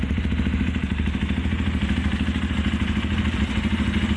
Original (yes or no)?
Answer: yes